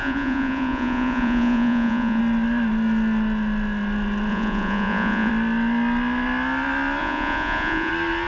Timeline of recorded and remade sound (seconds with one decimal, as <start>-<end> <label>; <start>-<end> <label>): 0.0-2.2 remade; 2.2-4.3 recorded; 4.3-5.3 remade; 5.3-7.0 recorded; 7.0-7.9 remade; 7.9-8.3 recorded